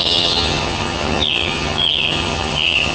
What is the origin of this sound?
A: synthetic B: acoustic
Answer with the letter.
A